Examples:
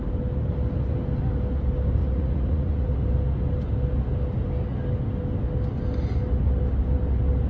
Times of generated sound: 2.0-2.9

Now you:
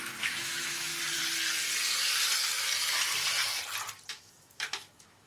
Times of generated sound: 0.0-0.9; 4.1-5.3

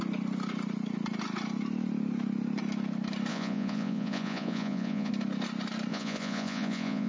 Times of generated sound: 3.3-5.1; 5.9-7.1

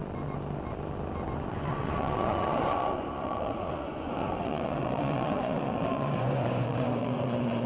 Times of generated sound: 1.5-7.7

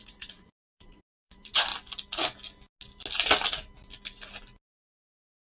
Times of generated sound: 0.0-1.7; 5.1-5.6

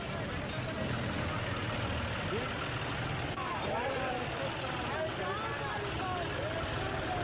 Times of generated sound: none

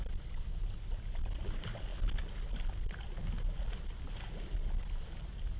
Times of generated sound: none

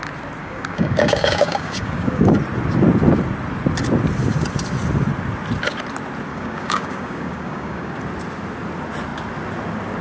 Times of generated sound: 0.4-2.2; 6.3-7.9